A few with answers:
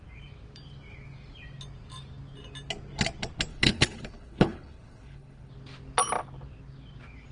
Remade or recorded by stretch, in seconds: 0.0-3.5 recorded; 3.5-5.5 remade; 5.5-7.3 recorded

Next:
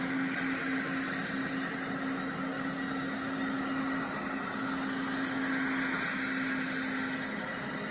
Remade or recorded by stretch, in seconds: 0.0-7.9 recorded

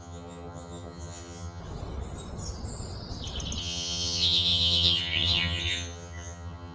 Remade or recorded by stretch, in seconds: 0.0-1.6 remade; 1.6-3.6 recorded; 3.6-6.7 remade

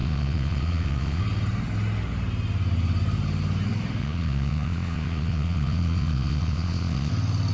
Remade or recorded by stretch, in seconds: 0.0-1.2 remade; 1.2-4.0 recorded; 4.0-7.1 remade; 7.1-7.5 recorded

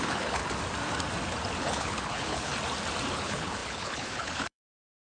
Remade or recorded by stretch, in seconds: 0.0-0.4 remade; 0.4-1.6 recorded; 1.6-2.5 remade; 2.5-3.1 recorded; 3.1-5.2 remade

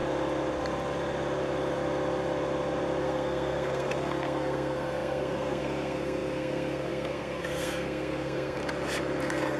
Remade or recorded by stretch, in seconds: 0.0-3.0 recorded; 3.0-8.6 remade; 8.6-9.2 recorded; 9.2-9.6 remade

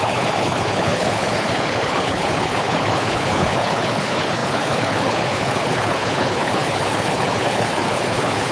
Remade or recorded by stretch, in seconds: 0.0-8.5 remade

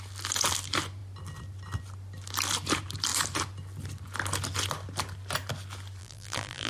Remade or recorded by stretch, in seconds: 0.0-6.0 recorded; 6.0-6.7 remade